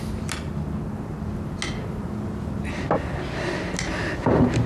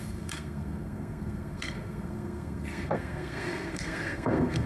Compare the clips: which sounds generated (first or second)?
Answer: second